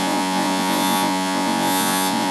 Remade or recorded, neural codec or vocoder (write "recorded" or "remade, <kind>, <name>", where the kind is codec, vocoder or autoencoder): remade, vocoder, Vocos